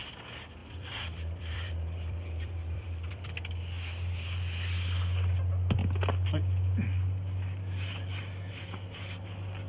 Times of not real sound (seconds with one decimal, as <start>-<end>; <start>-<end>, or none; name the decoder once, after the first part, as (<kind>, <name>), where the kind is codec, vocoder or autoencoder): 0.6-3.3 (vocoder, BigVGAN v2)